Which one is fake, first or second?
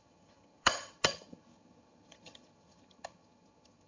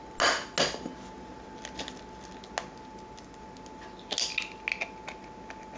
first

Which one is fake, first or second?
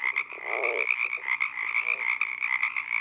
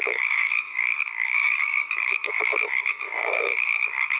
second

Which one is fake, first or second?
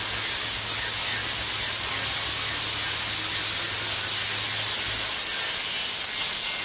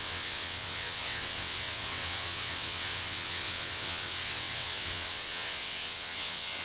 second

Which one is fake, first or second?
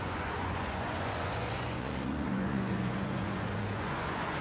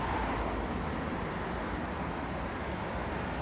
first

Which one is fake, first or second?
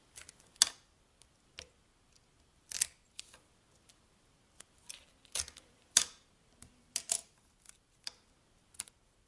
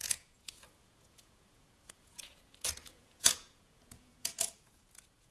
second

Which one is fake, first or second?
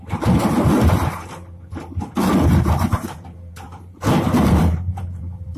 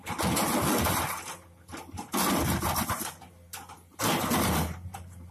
first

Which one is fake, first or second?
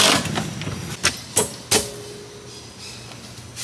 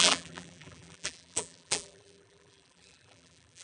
second